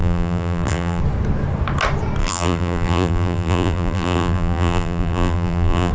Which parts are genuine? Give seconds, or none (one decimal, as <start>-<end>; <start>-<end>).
1.0-2.2